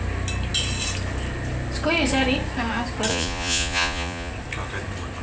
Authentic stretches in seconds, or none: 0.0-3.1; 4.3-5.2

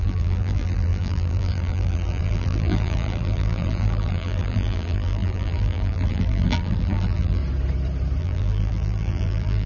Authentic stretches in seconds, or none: 7.4-8.2

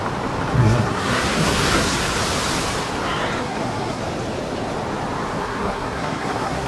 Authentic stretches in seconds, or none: 0.0-0.5; 2.2-3.4; 4.0-5.4

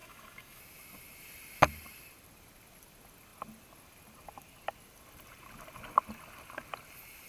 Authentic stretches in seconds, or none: 0.6-7.3

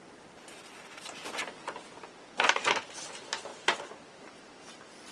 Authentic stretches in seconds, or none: 0.0-3.1; 3.5-4.1

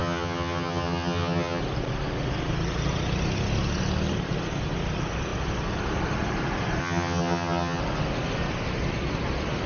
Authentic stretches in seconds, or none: 1.6-6.8; 7.8-9.7

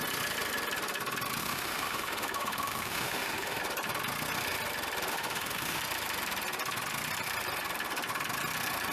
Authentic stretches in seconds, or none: 0.0-1.4; 3.6-5.1; 5.8-8.9